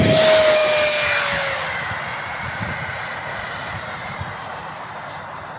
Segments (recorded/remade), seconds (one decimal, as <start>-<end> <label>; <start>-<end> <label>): 0.0-2.1 recorded; 2.1-4.8 remade; 4.8-5.6 recorded